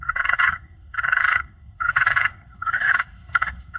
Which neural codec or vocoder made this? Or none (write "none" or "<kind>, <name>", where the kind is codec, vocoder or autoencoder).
codec, SNAC